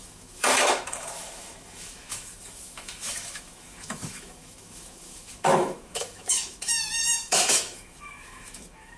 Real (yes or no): no